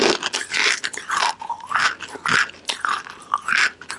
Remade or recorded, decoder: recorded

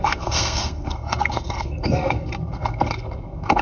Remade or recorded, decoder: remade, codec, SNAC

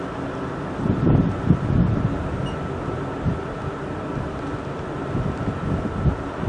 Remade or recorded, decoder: recorded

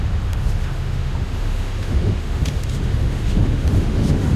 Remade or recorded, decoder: remade, autoencoder, DAC-VAE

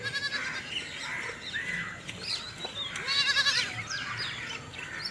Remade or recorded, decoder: recorded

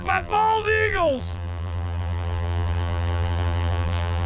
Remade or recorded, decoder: remade, vocoder, BigVGAN v2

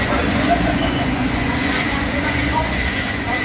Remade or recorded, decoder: remade, vocoder, Vocos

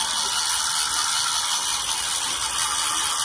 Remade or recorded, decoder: recorded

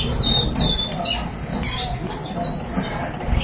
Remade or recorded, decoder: recorded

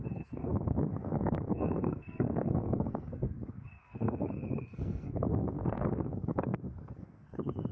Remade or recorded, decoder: remade, codec, SNAC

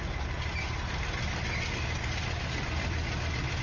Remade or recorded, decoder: recorded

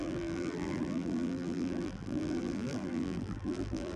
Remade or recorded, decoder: remade, vocoder, BigVGAN v2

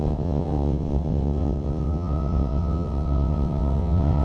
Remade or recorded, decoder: remade, vocoder, WaveNeXt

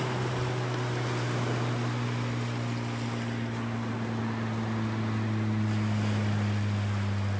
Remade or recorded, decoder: recorded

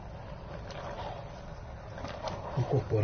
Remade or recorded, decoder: remade, vocoder, BigVGAN v2